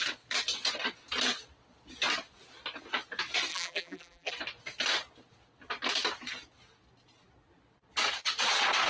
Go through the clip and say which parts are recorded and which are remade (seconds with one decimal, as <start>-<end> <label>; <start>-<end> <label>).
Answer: 0.0-3.5 recorded; 3.5-4.3 remade; 4.3-8.9 recorded